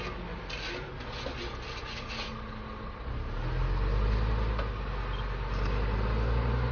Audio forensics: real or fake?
real